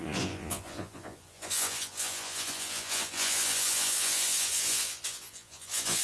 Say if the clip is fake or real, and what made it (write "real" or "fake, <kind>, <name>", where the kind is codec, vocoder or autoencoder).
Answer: fake, vocoder, Vocos